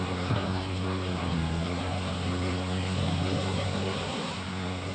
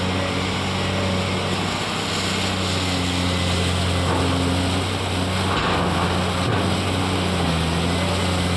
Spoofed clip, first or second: first